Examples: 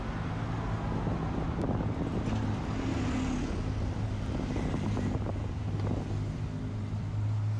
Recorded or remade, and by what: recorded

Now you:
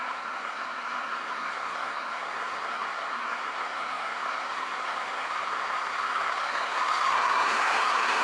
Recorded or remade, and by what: remade, codec, SNAC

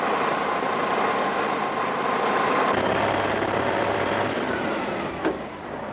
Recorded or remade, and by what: remade, vocoder, BigVGAN v2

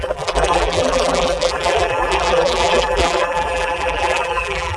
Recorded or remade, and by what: remade, vocoder, BigVGAN v2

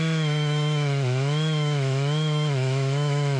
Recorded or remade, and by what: remade, autoencoder, DAC-VAE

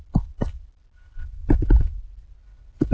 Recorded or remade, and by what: recorded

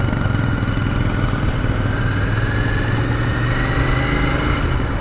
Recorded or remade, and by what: recorded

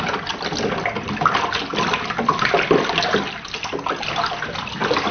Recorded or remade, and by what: recorded